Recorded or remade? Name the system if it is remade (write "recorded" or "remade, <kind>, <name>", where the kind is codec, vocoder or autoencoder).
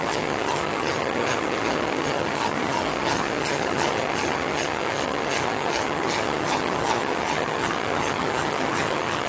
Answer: remade, vocoder, HiFi-GAN